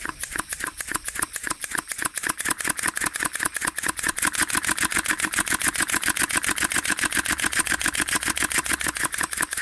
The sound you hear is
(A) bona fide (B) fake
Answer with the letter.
B